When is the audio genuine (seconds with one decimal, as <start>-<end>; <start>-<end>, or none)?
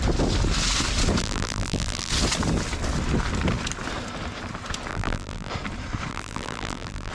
0.0-1.2; 2.1-4.9; 5.5-6.1